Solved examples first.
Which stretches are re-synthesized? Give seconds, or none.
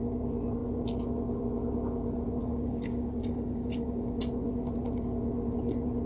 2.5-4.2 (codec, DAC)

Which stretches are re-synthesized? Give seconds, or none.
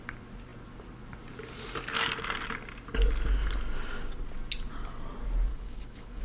5.5-6.2 (codec, HILCodec)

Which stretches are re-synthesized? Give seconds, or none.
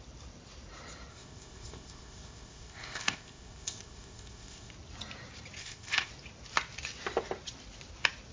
1.1-4.7 (codec, ZipCodec); 5.6-6.1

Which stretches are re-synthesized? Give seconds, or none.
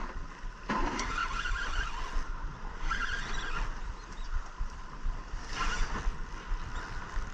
none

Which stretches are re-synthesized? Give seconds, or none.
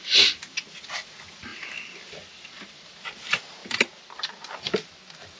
1.5-2.9 (vocoder, BigVGAN v2); 3.6-5.4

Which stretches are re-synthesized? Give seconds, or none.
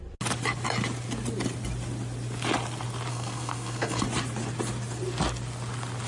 3.1-4.0 (codec, SNAC)